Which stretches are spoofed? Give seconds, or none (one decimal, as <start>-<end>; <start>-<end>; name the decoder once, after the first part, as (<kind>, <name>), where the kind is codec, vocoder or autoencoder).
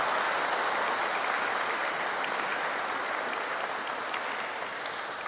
none